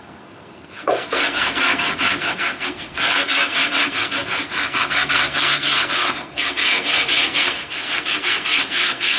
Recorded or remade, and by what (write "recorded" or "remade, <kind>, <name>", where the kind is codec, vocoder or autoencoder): remade, codec, SNAC